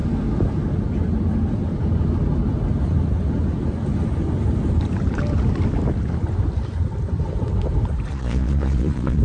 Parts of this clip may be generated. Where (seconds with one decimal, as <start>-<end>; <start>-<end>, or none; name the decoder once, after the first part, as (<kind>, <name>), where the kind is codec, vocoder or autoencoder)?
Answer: 8.1-9.2 (vocoder, Vocos)